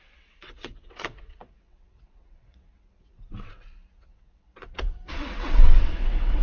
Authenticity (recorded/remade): remade